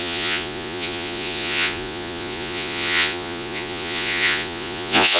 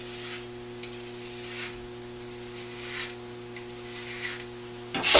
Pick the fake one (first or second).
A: first